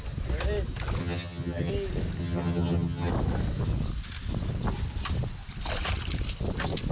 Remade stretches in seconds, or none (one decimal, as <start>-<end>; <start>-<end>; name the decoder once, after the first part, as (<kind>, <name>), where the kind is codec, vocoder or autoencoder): 1.0-1.7 (vocoder, HiFi-GAN); 2.2-3.1